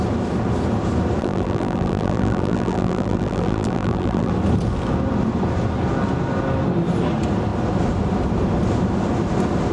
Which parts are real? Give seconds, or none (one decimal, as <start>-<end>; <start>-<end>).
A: 0.0-1.2; 4.3-9.7